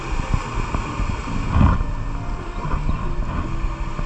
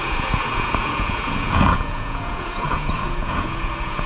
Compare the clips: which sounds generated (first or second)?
second